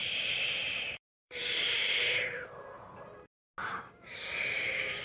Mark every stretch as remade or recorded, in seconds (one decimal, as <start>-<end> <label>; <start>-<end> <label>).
0.0-3.0 remade; 3.0-3.6 recorded; 3.6-5.0 remade